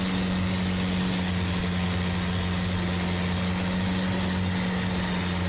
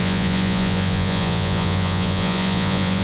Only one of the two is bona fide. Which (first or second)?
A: first